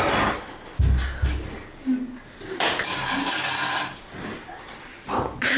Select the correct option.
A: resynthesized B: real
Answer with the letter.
B